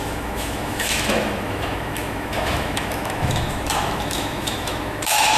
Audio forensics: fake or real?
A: fake